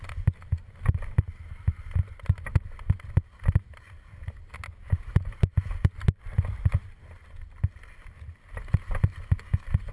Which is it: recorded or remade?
recorded